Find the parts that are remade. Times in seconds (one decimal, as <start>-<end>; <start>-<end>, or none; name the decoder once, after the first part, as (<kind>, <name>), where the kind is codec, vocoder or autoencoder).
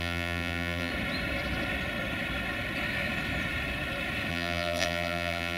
0.0-0.9 (vocoder, BigVGAN v2); 4.3-5.6